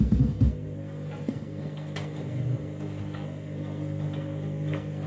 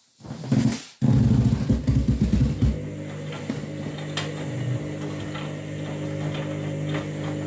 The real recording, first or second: second